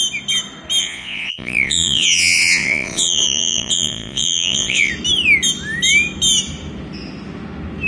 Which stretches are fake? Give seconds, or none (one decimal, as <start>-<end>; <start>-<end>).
0.8-4.9